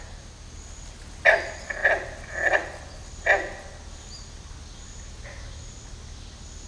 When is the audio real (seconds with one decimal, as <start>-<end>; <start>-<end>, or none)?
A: 0.0-6.7